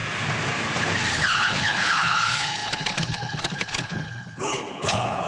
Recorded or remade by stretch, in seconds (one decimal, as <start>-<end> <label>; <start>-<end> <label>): 0.0-1.1 recorded; 1.1-5.3 remade